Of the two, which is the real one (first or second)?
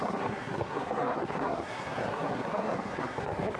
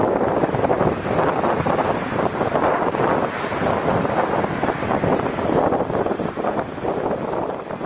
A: second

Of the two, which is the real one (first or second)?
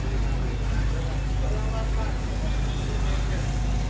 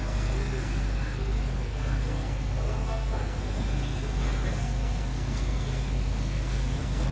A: first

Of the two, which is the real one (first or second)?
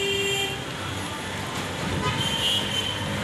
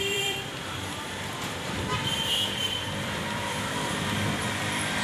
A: first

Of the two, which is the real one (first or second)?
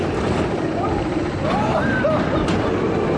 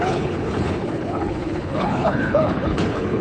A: first